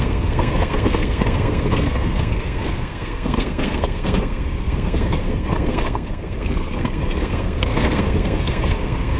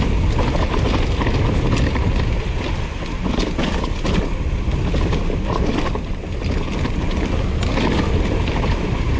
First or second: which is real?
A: second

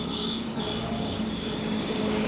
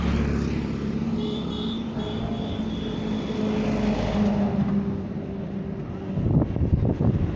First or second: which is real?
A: second